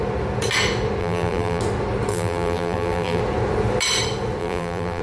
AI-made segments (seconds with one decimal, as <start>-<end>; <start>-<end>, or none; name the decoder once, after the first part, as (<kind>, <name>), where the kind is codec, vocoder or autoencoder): 1.0-1.6 (vocoder, BigVGAN v2); 2.1-3.2; 4.4-5.0